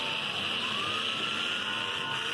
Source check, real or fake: real